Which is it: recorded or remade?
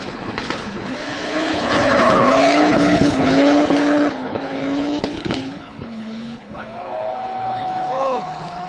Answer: remade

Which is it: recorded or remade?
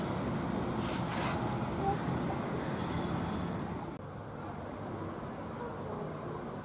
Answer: recorded